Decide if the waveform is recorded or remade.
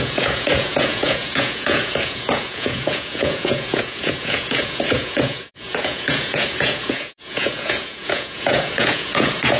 remade